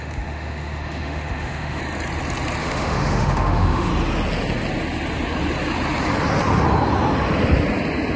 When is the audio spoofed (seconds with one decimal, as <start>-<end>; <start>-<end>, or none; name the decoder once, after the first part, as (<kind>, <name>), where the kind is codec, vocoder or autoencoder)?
0.0-1.8 (autoencoder, DAC-VAE); 2.6-3.9